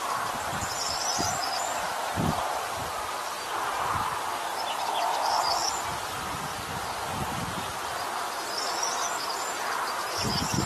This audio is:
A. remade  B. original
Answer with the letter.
B